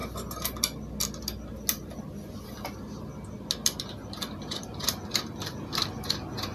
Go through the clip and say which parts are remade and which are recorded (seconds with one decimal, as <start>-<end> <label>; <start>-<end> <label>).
0.0-6.5 recorded